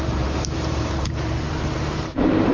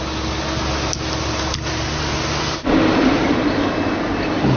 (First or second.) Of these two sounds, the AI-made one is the first